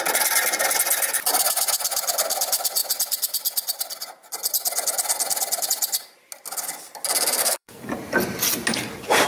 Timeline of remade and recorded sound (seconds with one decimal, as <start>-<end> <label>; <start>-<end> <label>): 0.0-7.4 recorded; 7.4-7.9 remade; 7.9-9.3 recorded